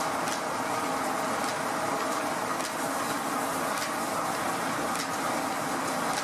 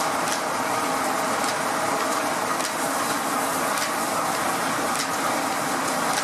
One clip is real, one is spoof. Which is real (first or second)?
first